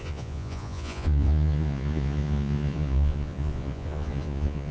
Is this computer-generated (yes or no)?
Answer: yes